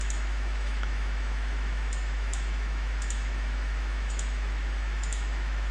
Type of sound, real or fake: fake